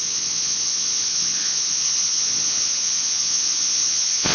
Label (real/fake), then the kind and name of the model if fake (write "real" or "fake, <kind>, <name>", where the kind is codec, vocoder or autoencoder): fake, vocoder, Vocos